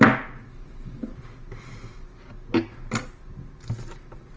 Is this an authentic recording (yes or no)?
yes